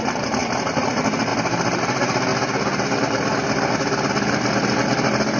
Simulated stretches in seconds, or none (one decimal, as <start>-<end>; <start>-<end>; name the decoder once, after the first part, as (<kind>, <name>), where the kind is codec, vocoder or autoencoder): none